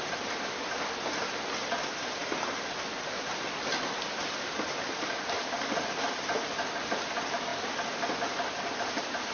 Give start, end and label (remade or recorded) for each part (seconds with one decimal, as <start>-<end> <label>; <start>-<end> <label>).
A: 0.0-9.3 recorded